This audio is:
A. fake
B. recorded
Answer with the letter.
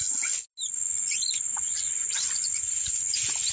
B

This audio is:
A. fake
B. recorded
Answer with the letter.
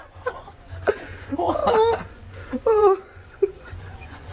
A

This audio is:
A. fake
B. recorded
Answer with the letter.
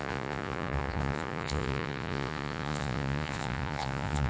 A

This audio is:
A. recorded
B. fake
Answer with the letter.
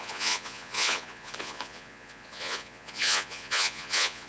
B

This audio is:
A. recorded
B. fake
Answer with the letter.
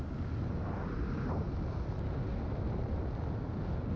A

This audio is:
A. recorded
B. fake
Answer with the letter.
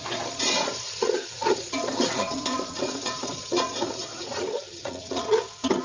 B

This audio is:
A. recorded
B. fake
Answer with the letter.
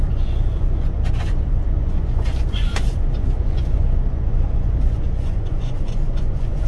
B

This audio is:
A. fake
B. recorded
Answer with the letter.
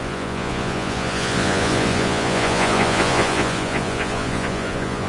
A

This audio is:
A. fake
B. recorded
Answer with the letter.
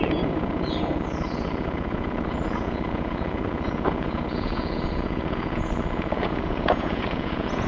A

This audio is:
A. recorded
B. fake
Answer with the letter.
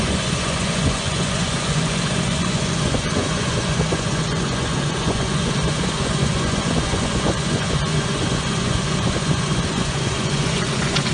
B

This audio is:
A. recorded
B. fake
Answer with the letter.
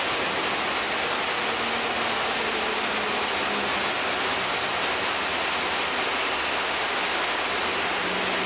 A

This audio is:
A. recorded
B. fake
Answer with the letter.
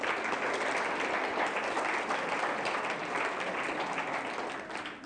A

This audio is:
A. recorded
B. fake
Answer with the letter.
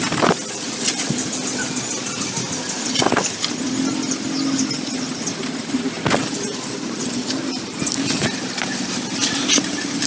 A